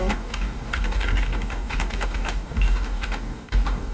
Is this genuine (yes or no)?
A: no